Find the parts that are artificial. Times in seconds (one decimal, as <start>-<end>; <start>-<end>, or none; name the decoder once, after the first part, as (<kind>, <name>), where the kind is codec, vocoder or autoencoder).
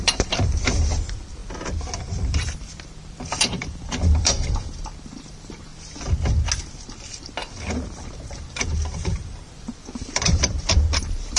0.0-1.4 (vocoder, BigVGAN v2); 2.0-5.7; 6.6-11.4